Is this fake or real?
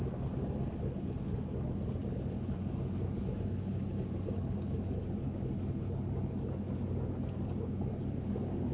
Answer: real